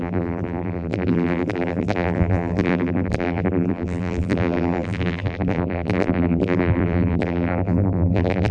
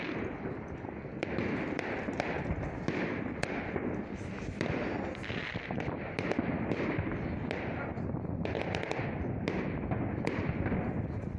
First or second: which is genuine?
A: second